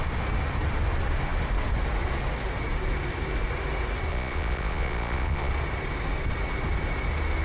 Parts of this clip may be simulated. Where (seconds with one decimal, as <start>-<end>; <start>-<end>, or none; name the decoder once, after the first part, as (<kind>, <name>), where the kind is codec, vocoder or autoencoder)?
4.1-5.5 (vocoder, Vocos)